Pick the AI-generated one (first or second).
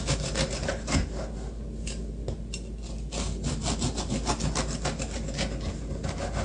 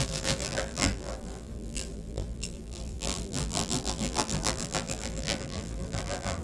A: second